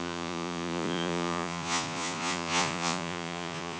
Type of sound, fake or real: fake